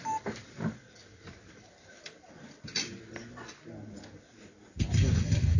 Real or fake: fake